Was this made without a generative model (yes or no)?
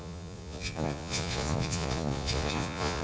no